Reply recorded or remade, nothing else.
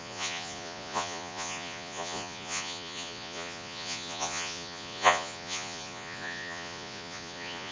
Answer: remade